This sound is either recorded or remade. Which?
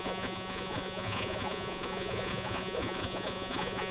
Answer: remade